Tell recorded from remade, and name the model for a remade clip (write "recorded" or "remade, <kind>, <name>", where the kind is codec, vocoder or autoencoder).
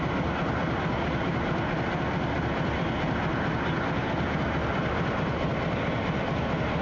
recorded